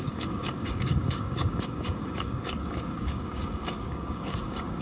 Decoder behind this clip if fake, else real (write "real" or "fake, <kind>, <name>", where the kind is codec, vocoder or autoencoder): fake, codec, DAC